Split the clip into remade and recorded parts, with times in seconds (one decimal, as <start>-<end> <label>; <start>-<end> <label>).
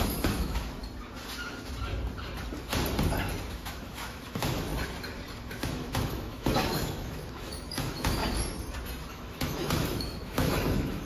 0.0-0.8 remade; 0.8-3.5 recorded; 3.5-4.7 remade; 4.7-5.4 recorded; 5.4-8.2 remade; 8.2-9.1 recorded; 9.1-11.1 remade